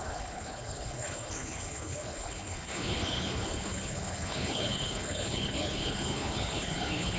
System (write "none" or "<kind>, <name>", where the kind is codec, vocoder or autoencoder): codec, HILCodec